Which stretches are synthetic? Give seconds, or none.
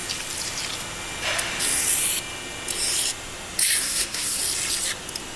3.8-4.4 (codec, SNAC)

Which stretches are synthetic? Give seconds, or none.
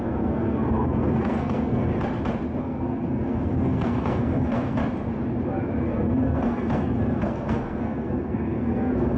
0.0-1.9 (codec, SNAC); 2.6-4.8; 5.8-9.2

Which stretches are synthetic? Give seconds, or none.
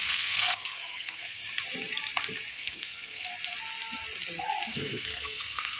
0.0-1.4 (codec, SNAC); 2.5-3.3; 4.7-5.8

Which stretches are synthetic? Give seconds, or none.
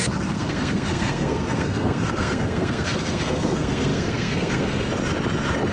0.0-4.9 (codec, SNAC)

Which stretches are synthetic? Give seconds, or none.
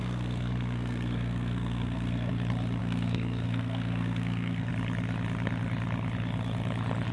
0.0-2.3 (codec, SNAC); 2.8-4.7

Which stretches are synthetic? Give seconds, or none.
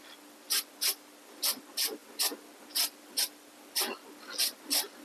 none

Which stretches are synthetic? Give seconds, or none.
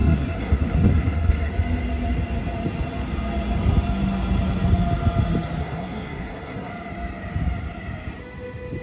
0.0-1.5 (codec, SNAC); 5.6-6.7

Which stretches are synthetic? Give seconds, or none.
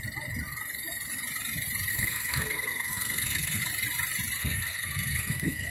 1.9-3.6 (codec, SNAC); 4.4-5.7